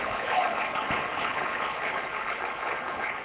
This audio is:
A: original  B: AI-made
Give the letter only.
B